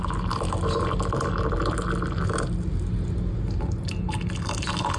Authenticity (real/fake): real